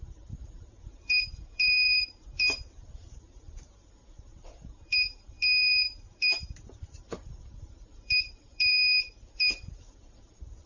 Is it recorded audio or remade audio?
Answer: remade